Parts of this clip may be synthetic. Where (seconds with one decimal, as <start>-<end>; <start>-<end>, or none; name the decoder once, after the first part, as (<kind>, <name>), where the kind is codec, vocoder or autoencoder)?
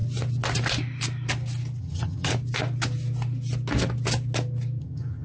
1.8-2.3 (vocoder, HiFi-GAN); 4.8-5.2